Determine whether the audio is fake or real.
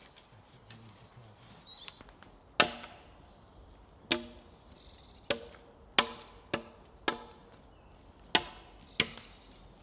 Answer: real